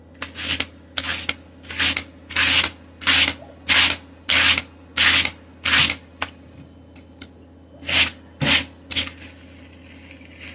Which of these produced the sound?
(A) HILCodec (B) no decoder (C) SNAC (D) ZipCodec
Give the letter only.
B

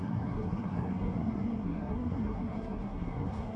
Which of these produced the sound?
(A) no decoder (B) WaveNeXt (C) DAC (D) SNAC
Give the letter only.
D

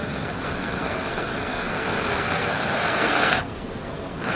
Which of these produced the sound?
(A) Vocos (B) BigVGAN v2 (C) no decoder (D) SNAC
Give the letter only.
D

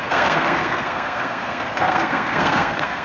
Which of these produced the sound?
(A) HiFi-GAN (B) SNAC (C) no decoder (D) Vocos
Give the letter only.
B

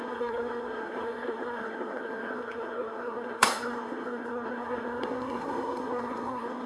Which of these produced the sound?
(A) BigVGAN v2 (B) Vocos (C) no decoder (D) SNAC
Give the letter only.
D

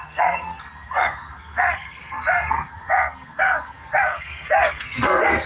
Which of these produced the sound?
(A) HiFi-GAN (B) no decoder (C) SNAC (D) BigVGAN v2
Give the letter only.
C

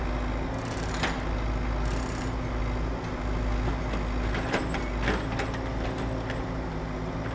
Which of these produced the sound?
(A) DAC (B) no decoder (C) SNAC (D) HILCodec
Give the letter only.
B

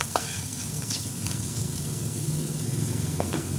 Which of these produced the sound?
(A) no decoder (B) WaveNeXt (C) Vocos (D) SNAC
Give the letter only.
D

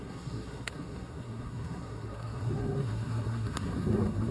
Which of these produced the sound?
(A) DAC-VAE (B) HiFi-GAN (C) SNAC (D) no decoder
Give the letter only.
C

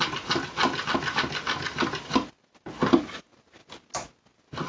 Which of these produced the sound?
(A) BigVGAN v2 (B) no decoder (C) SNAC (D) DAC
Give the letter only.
B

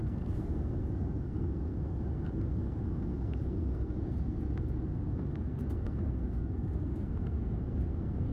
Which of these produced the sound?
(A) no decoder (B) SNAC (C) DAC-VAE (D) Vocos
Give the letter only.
B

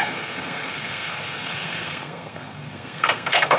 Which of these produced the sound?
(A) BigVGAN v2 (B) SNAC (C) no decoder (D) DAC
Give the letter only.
B